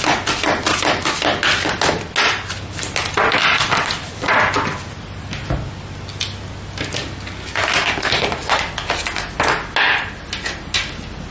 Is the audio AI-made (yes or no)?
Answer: no